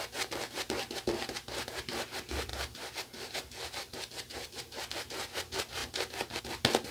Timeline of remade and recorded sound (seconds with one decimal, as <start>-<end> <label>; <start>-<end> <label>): 0.0-2.5 recorded; 2.5-4.8 remade; 4.8-6.9 recorded